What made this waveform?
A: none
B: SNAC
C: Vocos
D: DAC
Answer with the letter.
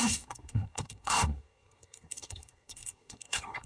B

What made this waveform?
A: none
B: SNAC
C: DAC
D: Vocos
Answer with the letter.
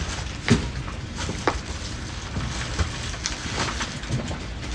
A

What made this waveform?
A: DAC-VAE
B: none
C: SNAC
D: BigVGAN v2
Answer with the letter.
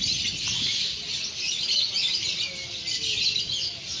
B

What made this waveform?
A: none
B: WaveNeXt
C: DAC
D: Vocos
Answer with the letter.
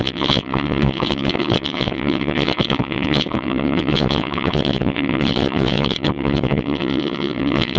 B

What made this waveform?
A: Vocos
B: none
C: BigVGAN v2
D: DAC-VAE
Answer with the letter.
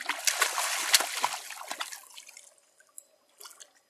B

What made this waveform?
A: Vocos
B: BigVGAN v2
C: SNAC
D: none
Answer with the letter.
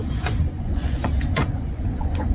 A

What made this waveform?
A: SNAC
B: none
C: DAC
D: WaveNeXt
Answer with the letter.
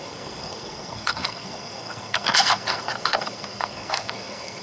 A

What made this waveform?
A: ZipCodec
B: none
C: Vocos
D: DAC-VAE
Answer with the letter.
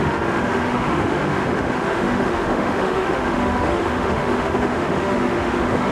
D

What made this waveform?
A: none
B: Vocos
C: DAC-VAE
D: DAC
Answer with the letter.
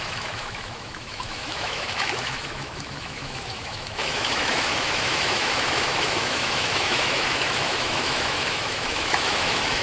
C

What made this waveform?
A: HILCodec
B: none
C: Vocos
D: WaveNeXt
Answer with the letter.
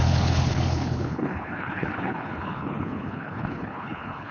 A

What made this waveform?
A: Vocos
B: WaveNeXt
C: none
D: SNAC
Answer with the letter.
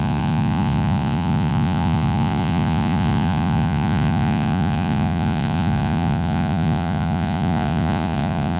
A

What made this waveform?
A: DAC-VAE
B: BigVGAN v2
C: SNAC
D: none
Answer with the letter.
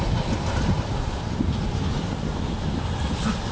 D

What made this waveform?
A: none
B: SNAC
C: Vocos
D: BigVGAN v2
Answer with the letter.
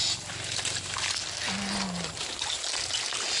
A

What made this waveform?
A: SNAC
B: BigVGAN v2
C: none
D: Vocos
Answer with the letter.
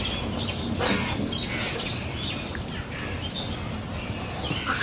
C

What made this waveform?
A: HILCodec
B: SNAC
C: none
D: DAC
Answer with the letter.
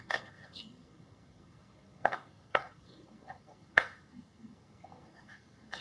B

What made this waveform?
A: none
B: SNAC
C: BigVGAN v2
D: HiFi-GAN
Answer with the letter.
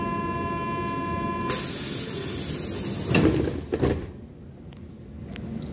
A